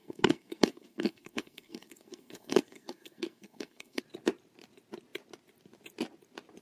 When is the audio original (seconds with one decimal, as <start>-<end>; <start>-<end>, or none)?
4.0-6.6